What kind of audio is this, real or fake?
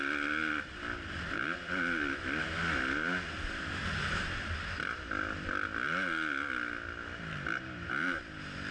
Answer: real